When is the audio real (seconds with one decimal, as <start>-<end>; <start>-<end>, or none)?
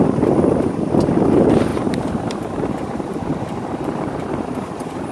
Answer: 0.0-1.7